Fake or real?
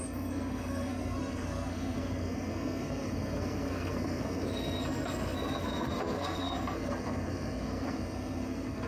fake